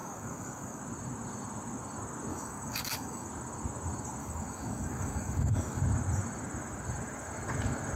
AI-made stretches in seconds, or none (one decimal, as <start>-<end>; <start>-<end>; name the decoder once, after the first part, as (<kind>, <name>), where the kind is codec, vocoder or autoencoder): 0.0-0.8 (codec, DAC); 2.3-3.3; 4.2-5.8